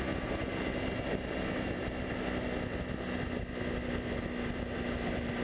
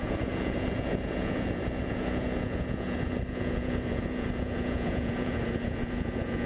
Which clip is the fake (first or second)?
second